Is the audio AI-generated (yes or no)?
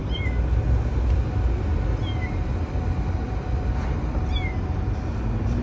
no